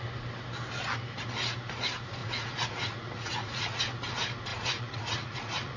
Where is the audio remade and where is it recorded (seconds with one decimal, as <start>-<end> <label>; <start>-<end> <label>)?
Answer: 0.0-2.2 recorded; 2.2-3.8 remade; 3.8-4.5 recorded; 4.5-5.8 remade